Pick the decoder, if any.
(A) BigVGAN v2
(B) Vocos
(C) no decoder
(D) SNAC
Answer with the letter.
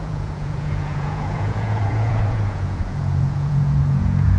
B